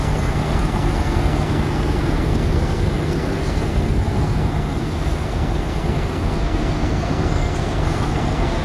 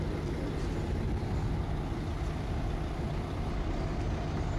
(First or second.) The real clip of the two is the second